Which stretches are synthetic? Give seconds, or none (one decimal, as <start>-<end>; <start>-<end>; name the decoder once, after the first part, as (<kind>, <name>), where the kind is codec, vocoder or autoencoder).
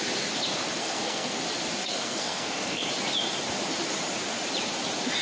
0.8-1.4 (codec, SNAC); 1.8-2.9